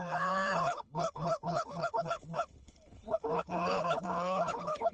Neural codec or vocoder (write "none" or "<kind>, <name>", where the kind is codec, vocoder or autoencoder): codec, HILCodec